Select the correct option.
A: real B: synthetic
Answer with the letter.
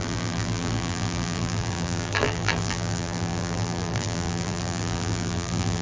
B